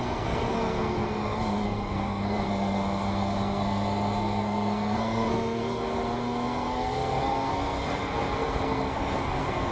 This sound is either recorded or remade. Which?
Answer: remade